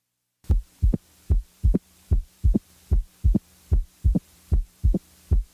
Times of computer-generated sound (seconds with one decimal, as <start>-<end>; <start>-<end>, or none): 1.5-4.8